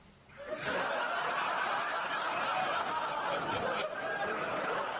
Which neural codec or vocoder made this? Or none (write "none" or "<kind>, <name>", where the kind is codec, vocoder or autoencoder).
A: none